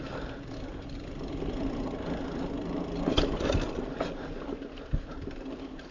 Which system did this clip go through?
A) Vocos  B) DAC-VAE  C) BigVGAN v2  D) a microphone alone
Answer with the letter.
D